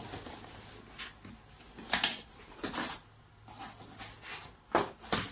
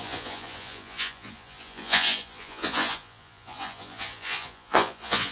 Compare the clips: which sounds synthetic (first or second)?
second